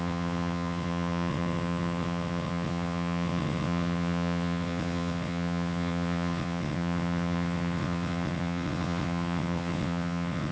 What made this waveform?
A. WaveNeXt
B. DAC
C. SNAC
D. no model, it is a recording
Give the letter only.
A